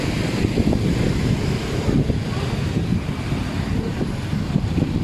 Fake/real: real